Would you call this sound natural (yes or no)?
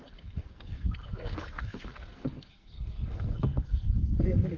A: no